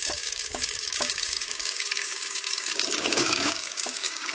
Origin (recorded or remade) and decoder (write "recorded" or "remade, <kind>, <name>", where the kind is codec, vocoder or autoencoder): remade, codec, DAC